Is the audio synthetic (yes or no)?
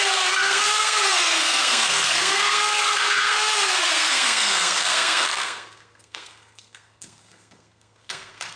yes